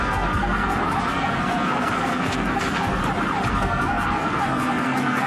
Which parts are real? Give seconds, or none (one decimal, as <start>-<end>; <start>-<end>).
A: 3.0-3.5